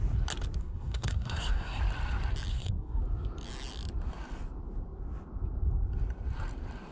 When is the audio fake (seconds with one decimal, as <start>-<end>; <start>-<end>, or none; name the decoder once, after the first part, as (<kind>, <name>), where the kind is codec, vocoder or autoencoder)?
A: 0.6-1.8 (codec, SNAC); 2.5-3.0